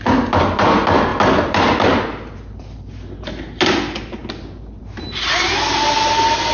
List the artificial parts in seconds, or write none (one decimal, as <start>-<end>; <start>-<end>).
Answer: none